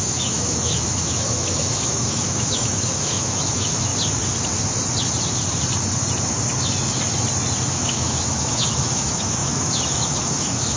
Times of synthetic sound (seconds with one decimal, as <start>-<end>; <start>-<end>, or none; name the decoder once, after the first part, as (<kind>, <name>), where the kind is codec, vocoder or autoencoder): 0.0-3.9 (autoencoder, DAC-VAE); 7.7-10.8